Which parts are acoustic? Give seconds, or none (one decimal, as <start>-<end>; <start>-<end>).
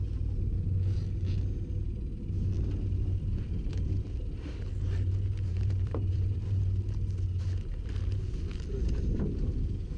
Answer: 0.0-5.5; 6.6-10.0